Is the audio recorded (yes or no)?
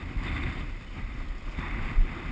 yes